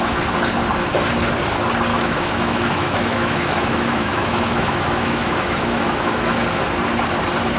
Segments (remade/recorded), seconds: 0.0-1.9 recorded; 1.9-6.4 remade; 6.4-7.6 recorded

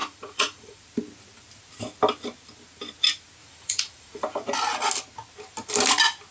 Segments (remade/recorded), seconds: 0.0-0.8 remade; 0.8-3.4 recorded; 3.4-4.2 remade; 4.2-6.3 recorded

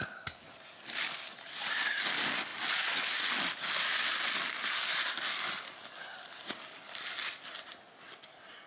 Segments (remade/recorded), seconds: 0.0-1.3 recorded; 1.3-2.0 remade; 2.0-8.7 recorded

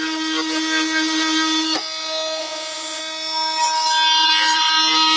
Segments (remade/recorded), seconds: 0.0-2.4 recorded; 2.4-3.0 remade; 3.0-5.2 recorded